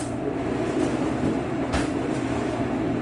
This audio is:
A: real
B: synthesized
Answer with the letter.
A